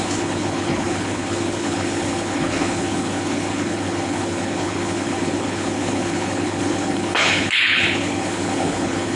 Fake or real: fake